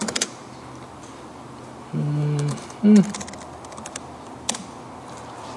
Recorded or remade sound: recorded